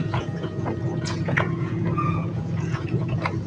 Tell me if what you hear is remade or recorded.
remade